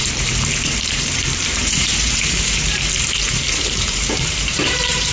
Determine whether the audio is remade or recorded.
remade